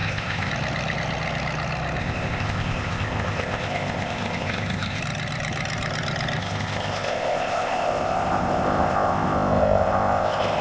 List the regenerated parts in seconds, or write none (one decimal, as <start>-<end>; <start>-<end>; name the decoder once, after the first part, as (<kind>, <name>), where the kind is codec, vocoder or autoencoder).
0.0-0.5 (codec, ZipCodec); 2.0-5.0; 6.4-10.6